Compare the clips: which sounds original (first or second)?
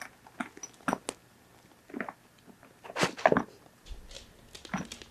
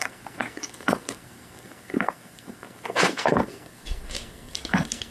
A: first